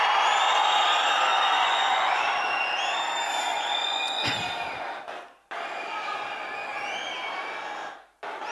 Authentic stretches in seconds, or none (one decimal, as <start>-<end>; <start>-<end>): 0.0-1.3; 2.2-3.5; 4.3-8.5